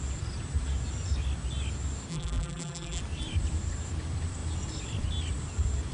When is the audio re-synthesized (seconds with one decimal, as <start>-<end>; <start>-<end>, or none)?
2.1-3.0